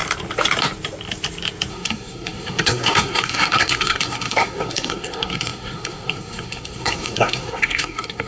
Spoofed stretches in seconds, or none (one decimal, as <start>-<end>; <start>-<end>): 1.7-8.3